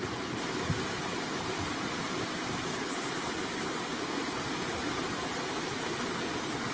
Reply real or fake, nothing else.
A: real